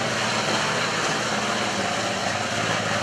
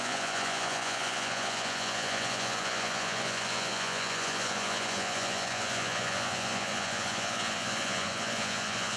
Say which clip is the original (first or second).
first